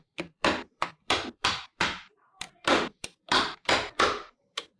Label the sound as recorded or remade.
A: remade